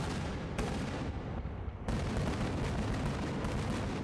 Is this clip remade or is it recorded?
recorded